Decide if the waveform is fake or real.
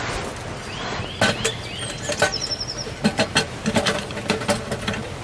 real